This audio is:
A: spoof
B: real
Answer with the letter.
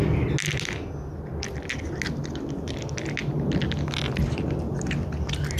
B